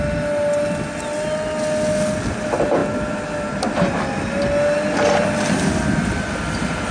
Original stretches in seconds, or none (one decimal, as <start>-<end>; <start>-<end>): 0.0-6.9